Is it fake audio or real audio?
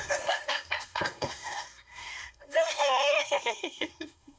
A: fake